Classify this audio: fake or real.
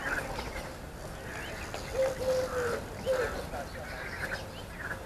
real